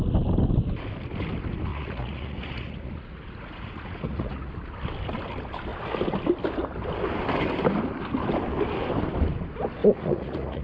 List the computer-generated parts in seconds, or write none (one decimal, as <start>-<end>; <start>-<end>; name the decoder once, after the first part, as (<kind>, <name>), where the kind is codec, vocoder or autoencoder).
1.7-4.5 (vocoder, Vocos); 9.8-10.6